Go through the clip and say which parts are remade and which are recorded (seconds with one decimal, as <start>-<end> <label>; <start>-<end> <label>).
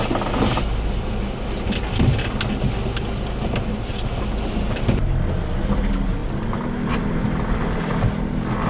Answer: 0.0-8.7 recorded